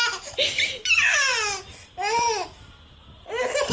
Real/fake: real